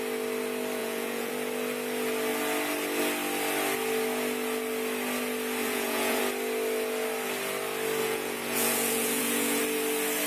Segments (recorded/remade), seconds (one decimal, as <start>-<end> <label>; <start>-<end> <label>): 0.0-0.8 recorded; 0.8-1.3 remade; 1.3-5.6 recorded; 5.6-6.2 remade; 6.2-8.0 recorded; 8.0-9.6 remade; 9.6-10.3 recorded